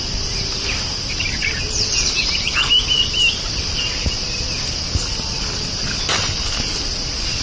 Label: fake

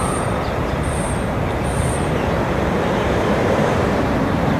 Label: fake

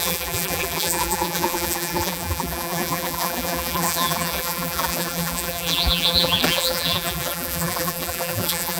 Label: fake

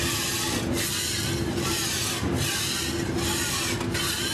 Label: real